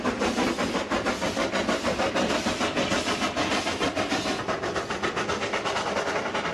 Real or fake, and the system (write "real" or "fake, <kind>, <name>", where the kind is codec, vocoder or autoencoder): real